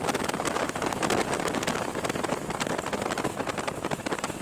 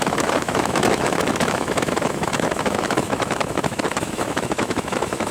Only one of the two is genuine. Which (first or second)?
first